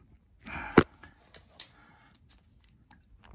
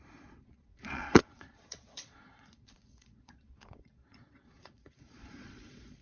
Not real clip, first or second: second